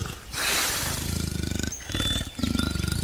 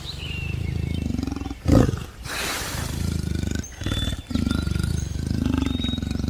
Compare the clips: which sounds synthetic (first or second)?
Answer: second